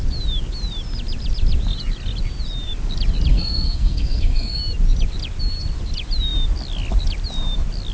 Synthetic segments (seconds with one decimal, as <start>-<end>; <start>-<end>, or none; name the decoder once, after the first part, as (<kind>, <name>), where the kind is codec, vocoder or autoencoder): 3.3-4.6 (codec, SNAC)